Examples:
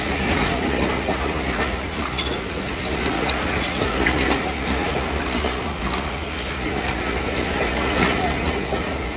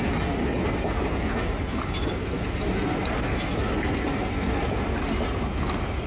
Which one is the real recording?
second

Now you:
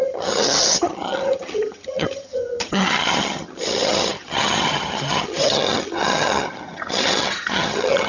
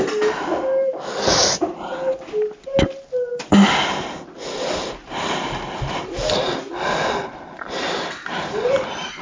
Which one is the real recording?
second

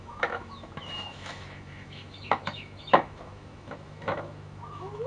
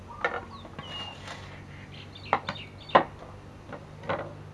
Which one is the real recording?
second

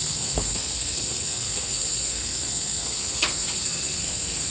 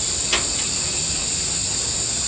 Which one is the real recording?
second